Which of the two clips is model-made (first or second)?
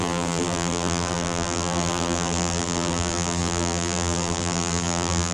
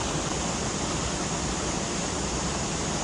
first